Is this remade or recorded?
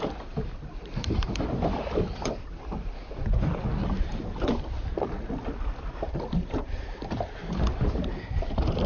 remade